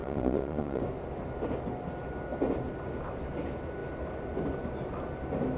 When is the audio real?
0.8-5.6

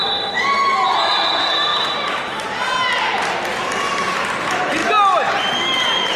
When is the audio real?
0.0-6.2

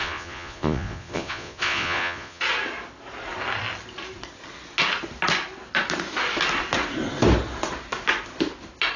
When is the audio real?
2.4-9.0